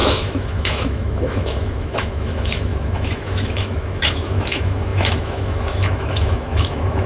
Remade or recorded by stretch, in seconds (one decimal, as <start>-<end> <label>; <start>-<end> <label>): 0.0-7.1 remade